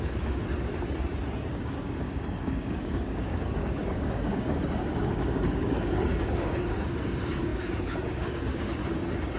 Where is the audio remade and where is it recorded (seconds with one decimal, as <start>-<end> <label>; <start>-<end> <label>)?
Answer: 0.0-0.4 remade; 0.4-1.5 recorded; 1.5-8.8 remade; 8.8-9.4 recorded